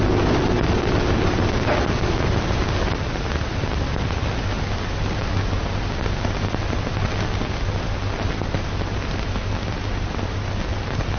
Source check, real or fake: real